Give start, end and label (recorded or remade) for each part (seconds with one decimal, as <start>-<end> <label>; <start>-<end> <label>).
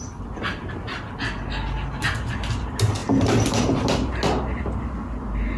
0.0-5.6 recorded